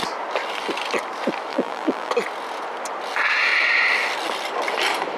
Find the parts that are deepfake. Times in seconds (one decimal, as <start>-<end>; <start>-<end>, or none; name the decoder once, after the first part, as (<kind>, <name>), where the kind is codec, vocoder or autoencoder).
1.5-2.1 (vocoder, BigVGAN v2)